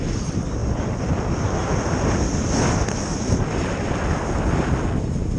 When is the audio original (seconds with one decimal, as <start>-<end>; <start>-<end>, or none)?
0.0-3.1; 3.9-5.4